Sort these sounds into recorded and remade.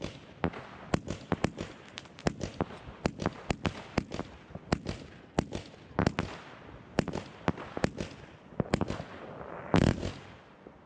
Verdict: recorded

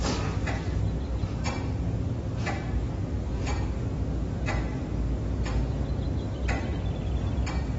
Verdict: recorded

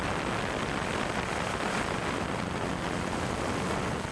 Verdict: recorded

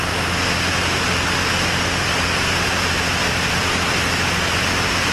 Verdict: recorded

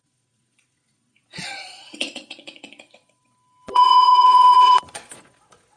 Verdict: remade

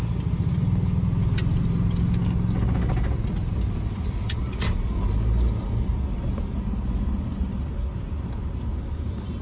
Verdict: recorded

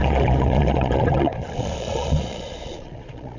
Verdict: remade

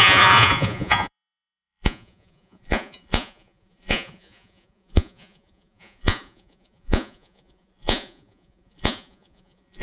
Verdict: remade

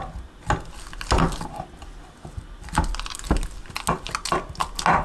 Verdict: recorded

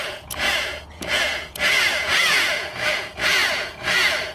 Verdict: remade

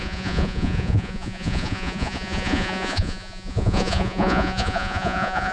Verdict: remade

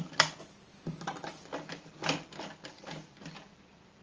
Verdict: recorded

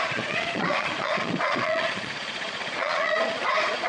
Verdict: remade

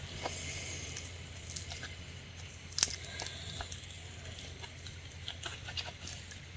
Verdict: recorded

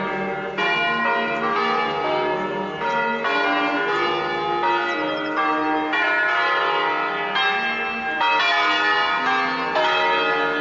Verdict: recorded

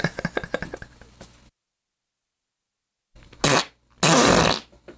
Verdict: recorded